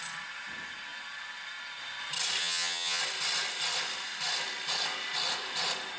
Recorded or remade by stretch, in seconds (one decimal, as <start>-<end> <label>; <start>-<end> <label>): 0.0-2.4 recorded; 2.4-3.0 remade; 3.0-6.0 recorded